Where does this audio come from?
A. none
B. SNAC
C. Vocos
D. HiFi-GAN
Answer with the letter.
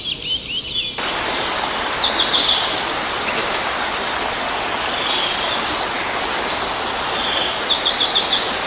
A